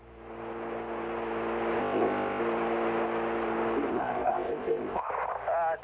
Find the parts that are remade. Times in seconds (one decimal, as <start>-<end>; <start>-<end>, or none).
1.8-2.4; 3.9-5.1

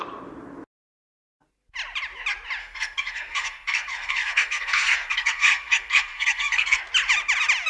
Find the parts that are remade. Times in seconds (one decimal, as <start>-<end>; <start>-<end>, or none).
2.6-6.8

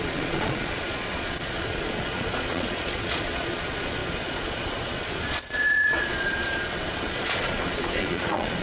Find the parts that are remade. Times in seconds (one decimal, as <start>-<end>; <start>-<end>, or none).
0.0-8.6

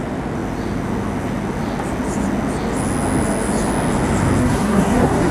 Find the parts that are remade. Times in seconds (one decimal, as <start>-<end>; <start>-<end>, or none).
4.4-5.3